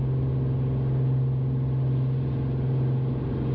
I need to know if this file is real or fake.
real